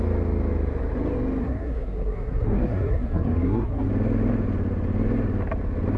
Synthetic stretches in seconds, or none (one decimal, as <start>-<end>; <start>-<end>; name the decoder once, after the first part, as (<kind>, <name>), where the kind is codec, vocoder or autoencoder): 1.4-3.9 (codec, SNAC)